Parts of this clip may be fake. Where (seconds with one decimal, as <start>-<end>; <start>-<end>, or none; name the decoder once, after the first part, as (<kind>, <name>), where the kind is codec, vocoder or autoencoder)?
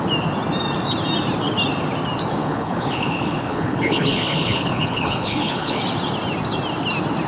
2.4-5.8 (codec, HILCodec)